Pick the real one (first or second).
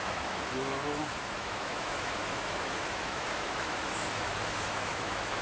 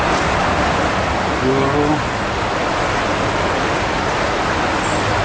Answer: second